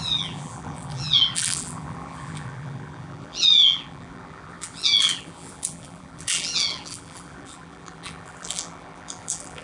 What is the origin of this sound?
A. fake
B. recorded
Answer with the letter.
A